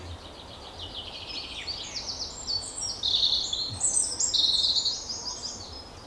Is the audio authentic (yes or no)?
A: yes